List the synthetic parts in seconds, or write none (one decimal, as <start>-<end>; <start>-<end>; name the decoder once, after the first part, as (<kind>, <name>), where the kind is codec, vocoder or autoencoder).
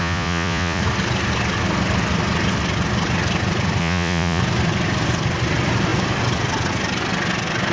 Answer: 0.0-0.8 (vocoder, Vocos); 3.8-4.4